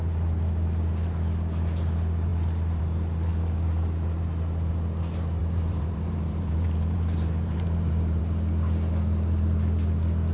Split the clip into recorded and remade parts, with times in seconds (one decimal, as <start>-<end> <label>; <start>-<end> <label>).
0.0-5.4 recorded; 5.4-8.2 remade; 8.2-10.3 recorded